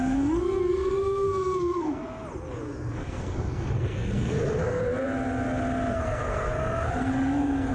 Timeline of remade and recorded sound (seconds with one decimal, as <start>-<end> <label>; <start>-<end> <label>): 0.0-2.0 remade; 2.0-2.9 recorded; 2.9-4.8 remade; 4.8-5.9 recorded; 5.9-7.7 remade